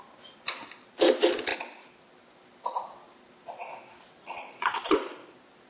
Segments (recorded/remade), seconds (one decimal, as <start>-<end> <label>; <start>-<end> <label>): 0.0-4.2 recorded; 4.2-5.1 remade; 5.1-5.7 recorded